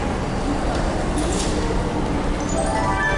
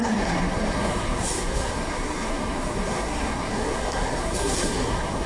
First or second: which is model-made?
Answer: second